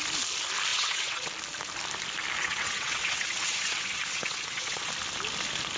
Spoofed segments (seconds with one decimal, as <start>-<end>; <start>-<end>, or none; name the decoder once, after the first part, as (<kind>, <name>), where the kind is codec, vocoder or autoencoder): 0.7-1.3 (vocoder, WaveNeXt); 2.4-4.9